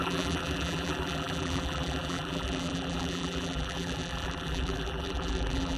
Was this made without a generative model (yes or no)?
no